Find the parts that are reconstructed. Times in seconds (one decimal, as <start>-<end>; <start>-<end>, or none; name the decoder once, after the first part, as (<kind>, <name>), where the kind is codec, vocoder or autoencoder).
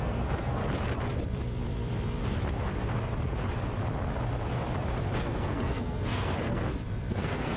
0.0-0.6 (codec, SNAC); 5.2-6.6; 7.1-7.6